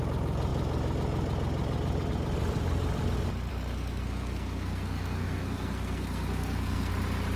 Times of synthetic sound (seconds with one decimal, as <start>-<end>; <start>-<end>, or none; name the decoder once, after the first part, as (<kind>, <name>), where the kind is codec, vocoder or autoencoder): 3.5-6.9 (codec, SNAC)